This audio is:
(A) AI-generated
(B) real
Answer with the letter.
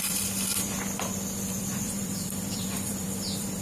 A